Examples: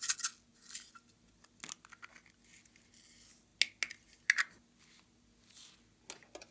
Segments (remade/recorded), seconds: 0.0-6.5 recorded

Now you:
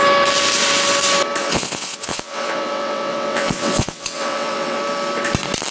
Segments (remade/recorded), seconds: 0.0-1.4 recorded; 1.4-4.8 remade; 4.8-5.7 recorded

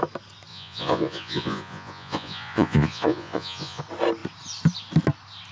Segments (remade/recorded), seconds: 0.0-0.5 recorded; 0.5-3.8 remade; 3.8-5.5 recorded

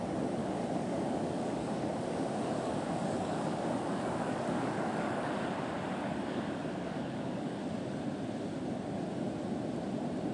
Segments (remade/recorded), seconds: 0.0-0.4 recorded; 0.4-5.3 remade; 5.3-5.9 recorded; 5.9-7.6 remade; 7.6-10.3 recorded

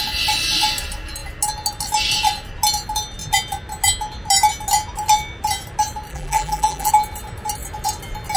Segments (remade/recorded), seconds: 0.0-6.1 recorded; 6.1-6.9 remade; 6.9-8.4 recorded